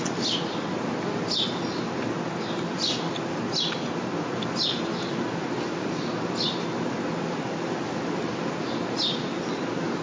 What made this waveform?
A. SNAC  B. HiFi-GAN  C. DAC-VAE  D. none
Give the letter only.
D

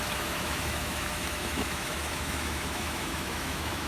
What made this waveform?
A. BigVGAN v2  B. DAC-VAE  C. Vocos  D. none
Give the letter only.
B